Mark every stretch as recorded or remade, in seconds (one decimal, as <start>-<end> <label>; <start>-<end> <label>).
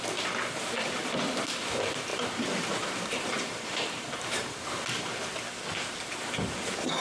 0.0-2.1 recorded; 2.1-5.0 remade; 5.0-7.0 recorded